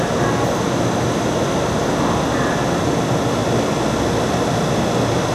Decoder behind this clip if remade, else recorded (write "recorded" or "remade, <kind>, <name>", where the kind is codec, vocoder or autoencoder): recorded